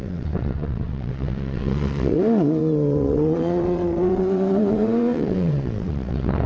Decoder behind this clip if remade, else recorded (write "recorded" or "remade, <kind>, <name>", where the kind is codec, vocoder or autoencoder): remade, vocoder, WaveNeXt